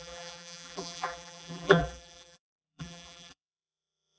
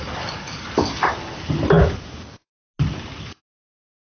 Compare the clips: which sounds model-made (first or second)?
first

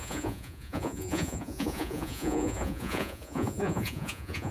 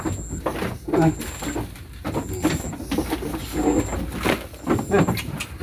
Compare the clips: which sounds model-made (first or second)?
first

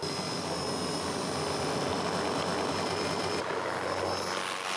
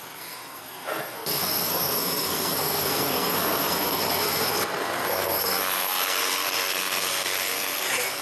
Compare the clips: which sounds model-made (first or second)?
second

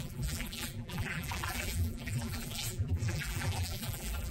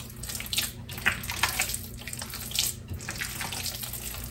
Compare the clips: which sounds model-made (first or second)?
first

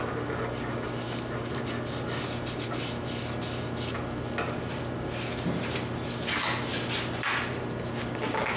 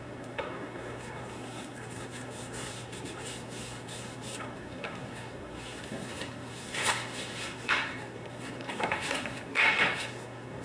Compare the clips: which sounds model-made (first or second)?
second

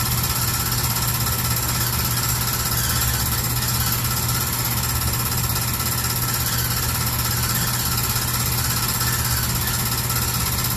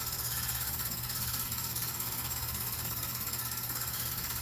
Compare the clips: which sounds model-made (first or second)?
second